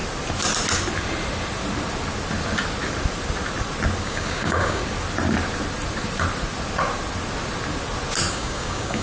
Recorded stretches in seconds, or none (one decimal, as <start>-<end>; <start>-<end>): 0.0-4.0; 4.8-8.3